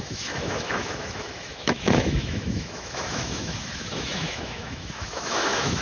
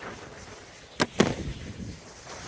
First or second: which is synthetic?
first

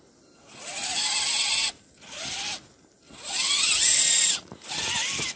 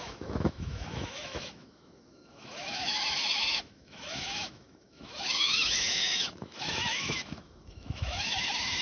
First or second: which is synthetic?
second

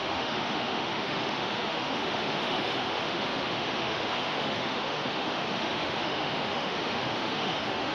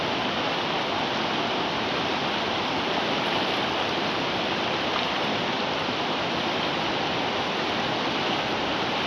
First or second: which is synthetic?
first